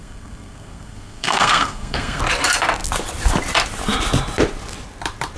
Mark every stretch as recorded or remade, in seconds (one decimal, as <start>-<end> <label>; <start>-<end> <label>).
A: 0.0-2.2 remade; 2.2-5.4 recorded

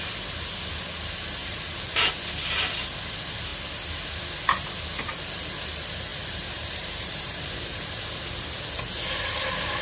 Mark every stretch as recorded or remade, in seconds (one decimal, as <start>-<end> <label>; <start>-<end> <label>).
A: 0.0-1.4 recorded; 1.4-2.1 remade; 2.1-6.1 recorded; 6.1-7.5 remade; 7.5-9.8 recorded

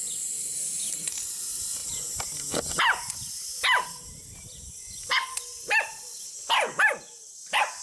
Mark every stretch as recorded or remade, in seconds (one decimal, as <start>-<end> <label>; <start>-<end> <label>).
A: 0.0-7.8 recorded

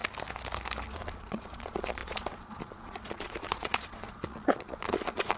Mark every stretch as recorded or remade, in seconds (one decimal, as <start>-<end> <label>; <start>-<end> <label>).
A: 0.0-0.9 recorded; 0.9-5.4 remade

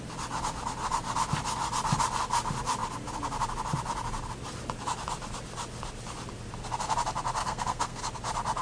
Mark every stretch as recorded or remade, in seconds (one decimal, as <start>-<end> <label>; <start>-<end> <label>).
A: 0.0-7.4 recorded; 7.4-8.0 remade; 8.0-8.6 recorded

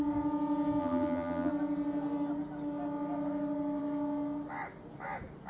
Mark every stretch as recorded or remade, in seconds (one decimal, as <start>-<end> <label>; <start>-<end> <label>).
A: 0.0-0.8 recorded; 0.8-1.5 remade; 1.5-5.5 recorded